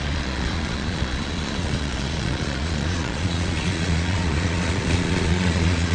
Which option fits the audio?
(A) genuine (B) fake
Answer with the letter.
B